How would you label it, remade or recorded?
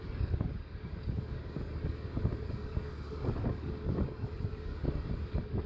remade